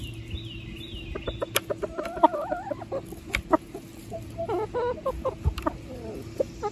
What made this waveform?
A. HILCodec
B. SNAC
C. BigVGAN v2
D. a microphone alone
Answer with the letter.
D